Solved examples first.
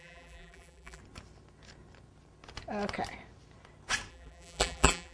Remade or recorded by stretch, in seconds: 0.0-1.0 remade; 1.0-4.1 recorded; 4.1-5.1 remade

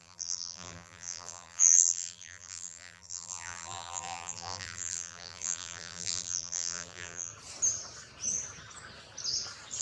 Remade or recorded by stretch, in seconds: 0.0-7.3 remade; 7.3-9.8 recorded